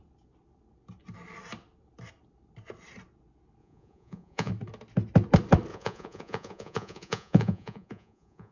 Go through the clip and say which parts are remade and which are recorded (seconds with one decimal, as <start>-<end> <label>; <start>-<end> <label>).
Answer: 0.0-3.6 recorded; 3.6-4.5 remade; 4.5-5.7 recorded; 5.7-8.5 remade